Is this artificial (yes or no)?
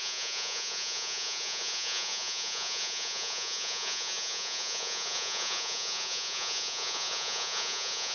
yes